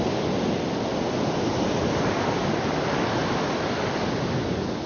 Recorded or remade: recorded